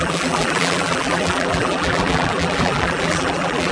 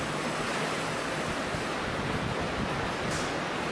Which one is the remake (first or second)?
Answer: first